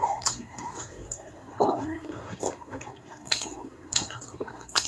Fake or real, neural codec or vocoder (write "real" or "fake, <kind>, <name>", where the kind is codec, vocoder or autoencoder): fake, codec, SNAC